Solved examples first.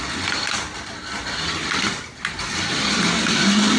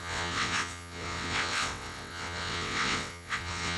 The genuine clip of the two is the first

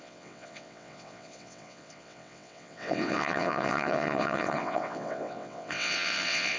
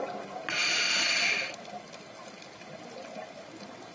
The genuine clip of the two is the second